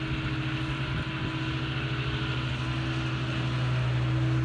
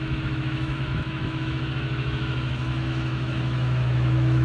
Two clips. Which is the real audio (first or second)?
first